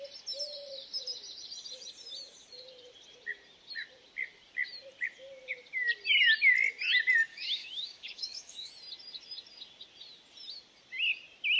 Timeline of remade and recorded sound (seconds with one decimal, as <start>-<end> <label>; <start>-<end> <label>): 0.0-7.3 recorded; 7.3-8.7 remade; 8.7-11.6 recorded